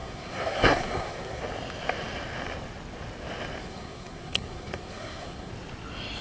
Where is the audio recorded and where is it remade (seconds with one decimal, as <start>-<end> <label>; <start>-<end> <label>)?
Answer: 0.0-1.4 remade; 1.4-3.6 recorded; 3.6-5.5 remade; 5.5-6.2 recorded